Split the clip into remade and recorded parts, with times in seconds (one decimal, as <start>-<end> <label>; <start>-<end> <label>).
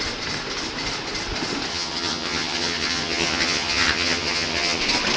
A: 0.0-1.7 recorded; 1.7-4.8 remade; 4.8-5.2 recorded